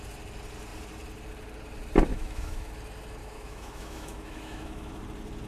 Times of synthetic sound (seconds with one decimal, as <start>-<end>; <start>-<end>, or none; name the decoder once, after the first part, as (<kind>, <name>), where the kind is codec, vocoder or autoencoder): 2.1-2.7 (autoencoder, DAC-VAE); 3.2-5.0